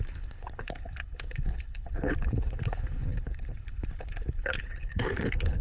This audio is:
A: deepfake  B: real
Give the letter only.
A